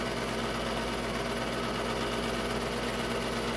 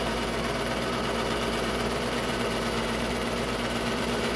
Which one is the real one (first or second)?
first